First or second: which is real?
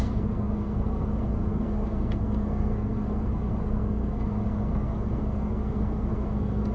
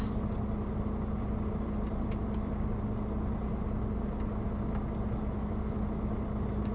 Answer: second